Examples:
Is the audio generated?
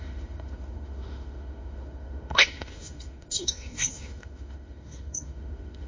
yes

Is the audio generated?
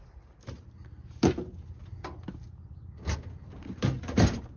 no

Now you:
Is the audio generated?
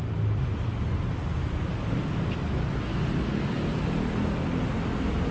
no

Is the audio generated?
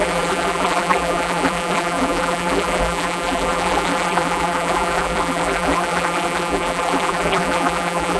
yes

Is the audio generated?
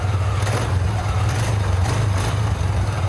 yes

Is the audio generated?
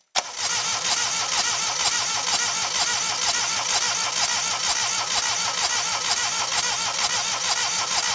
no